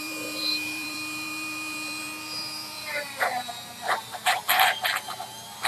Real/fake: fake